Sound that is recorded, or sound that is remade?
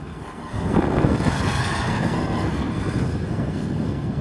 remade